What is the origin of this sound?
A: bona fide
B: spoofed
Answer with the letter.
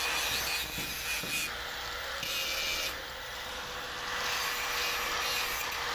A